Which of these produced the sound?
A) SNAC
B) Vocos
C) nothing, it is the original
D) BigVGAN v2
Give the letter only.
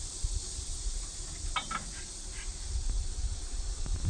C